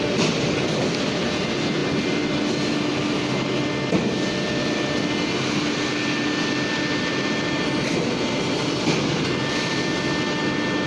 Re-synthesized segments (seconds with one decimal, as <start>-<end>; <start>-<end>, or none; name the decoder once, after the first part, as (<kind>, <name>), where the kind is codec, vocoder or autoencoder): none